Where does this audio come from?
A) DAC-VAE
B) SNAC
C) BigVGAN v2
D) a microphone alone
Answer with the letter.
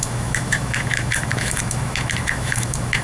A